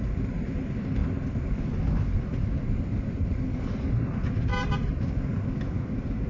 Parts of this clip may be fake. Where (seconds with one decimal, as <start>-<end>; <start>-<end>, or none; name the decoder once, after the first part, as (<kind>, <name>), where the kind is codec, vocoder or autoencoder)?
none

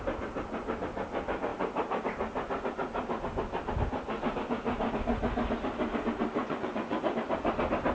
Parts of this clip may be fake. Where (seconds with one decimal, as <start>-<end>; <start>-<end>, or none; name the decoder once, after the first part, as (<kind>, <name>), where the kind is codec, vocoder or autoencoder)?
6.4-7.0 (vocoder, Vocos)

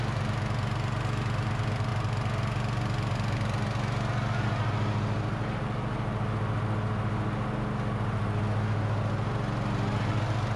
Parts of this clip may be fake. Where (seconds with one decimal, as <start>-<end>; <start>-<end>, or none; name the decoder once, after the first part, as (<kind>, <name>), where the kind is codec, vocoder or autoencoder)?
none

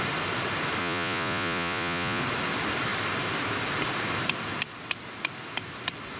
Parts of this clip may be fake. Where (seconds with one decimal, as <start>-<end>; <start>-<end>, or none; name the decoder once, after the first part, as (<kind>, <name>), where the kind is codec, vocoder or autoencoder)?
0.8-2.2 (vocoder, Vocos)

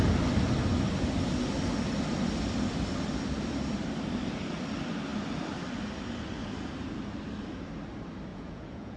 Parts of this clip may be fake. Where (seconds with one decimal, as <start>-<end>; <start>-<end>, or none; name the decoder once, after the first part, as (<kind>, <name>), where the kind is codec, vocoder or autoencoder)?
8.3-9.0 (vocoder, Vocos)